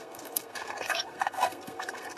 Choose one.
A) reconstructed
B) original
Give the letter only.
A